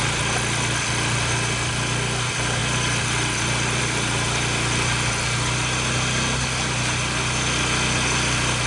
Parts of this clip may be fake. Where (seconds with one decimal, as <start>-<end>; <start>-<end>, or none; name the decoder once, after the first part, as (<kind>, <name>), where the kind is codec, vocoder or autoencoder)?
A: none